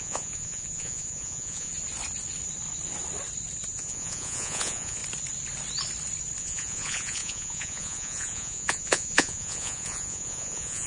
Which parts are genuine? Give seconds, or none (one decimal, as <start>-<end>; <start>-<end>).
1.7-3.7; 5.0-6.4